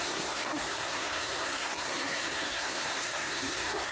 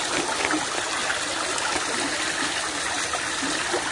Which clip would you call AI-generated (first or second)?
first